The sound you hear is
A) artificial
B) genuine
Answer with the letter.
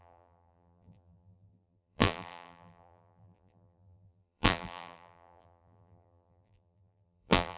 A